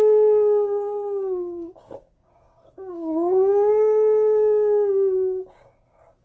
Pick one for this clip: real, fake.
fake